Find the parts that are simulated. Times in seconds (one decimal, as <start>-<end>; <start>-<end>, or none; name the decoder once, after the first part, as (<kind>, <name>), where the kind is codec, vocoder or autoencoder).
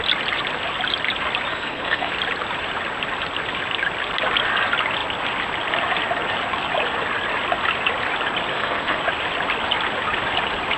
1.5-2.1 (codec, SNAC); 8.5-9.0